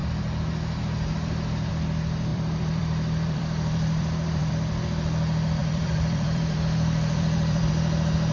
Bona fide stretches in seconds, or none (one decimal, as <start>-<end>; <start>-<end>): 0.0-2.3; 4.5-5.6; 7.7-8.3